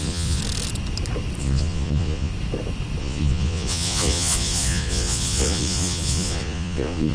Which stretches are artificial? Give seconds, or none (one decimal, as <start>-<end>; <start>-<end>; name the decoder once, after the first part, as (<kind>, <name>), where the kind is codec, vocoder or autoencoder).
0.0-0.4 (vocoder, Vocos); 1.4-2.3; 3.0-7.1